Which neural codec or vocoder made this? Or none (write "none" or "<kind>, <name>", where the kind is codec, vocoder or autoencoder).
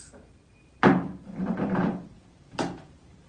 vocoder, BigVGAN v2